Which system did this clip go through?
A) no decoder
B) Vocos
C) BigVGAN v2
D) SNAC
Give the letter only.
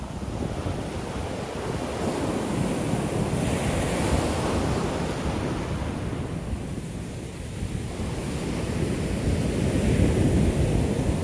A